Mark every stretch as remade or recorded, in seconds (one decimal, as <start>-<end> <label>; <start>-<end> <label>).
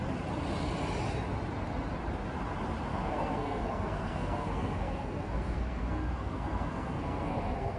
0.0-2.9 recorded; 2.9-7.8 remade